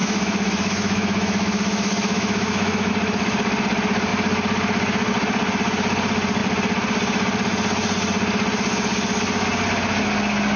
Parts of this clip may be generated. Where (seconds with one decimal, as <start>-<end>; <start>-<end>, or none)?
0.0-2.9